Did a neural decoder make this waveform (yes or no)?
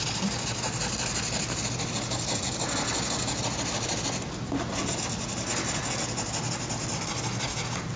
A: no